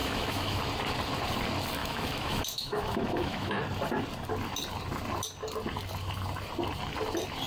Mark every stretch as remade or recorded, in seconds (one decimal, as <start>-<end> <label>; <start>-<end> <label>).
0.0-0.6 remade; 0.6-1.8 recorded; 1.8-3.6 remade; 3.6-7.5 recorded